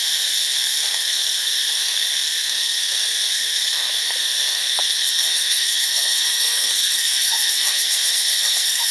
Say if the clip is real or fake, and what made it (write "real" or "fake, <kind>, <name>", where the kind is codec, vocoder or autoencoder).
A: fake, codec, SNAC